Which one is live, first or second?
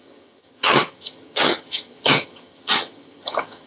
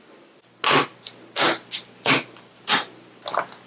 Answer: second